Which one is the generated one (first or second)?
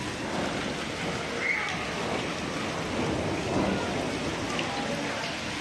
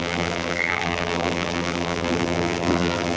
second